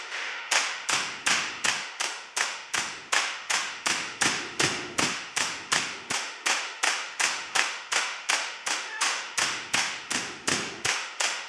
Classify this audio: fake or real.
fake